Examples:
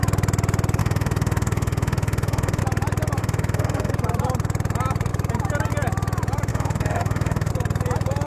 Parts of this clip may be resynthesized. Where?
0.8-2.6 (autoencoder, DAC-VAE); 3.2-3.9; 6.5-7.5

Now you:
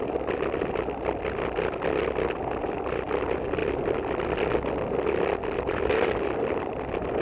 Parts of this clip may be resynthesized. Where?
none